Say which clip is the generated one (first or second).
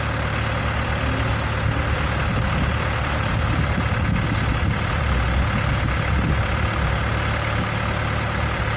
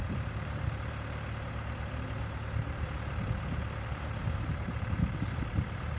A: second